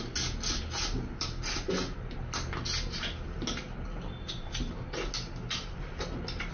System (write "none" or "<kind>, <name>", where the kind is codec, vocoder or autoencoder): none